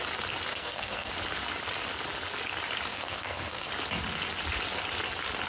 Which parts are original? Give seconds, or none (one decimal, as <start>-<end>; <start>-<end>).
0.0-0.5; 1.1-2.9; 3.7-5.5